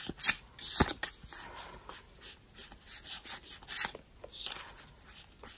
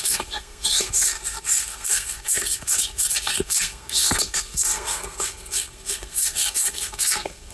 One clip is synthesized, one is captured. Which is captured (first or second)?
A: first